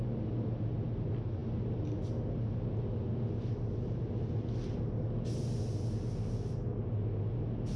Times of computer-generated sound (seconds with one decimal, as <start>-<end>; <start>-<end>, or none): none